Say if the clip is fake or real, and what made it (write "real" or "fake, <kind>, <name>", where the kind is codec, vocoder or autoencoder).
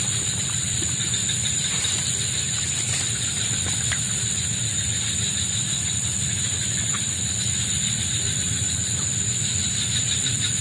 real